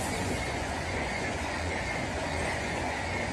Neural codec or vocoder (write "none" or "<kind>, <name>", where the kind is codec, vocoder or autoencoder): vocoder, Vocos